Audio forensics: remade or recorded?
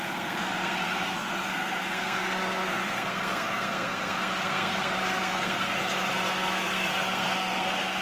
remade